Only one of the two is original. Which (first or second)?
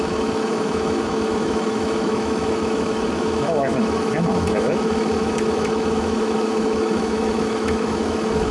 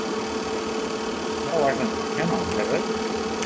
second